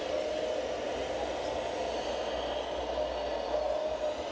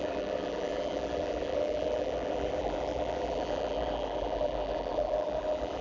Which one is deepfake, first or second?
second